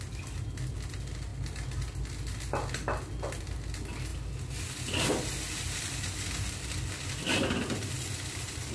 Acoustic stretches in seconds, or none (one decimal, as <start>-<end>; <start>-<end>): 0.0-8.7